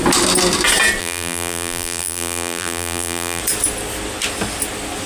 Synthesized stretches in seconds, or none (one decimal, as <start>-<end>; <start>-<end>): 1.0-3.4